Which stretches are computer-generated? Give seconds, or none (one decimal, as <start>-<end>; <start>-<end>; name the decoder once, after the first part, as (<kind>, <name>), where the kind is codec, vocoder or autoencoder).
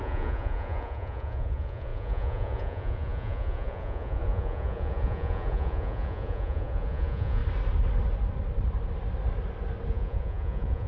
0.0-7.4 (vocoder, Vocos); 9.9-10.9